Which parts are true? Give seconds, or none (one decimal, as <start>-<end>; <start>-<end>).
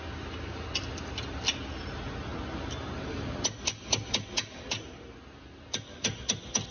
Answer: 0.0-6.7